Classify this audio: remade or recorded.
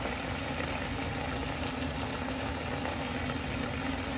recorded